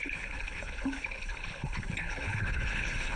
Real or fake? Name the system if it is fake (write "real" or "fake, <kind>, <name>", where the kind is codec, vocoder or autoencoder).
fake, codec, HILCodec